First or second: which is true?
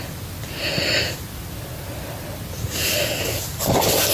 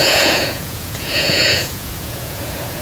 first